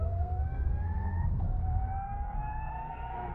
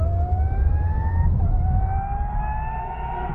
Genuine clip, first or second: second